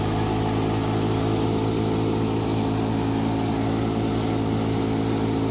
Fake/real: real